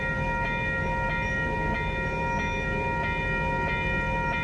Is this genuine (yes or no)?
yes